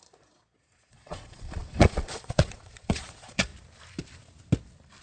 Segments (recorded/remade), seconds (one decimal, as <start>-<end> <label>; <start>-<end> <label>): 0.0-3.5 remade; 3.5-5.0 recorded